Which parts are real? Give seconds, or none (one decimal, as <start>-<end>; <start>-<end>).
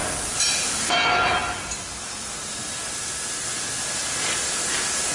2.9-5.1